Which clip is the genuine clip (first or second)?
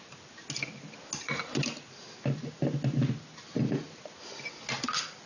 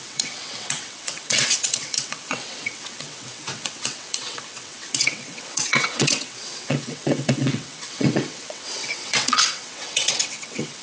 first